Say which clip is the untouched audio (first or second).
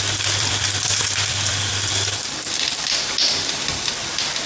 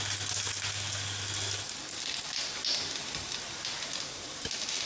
second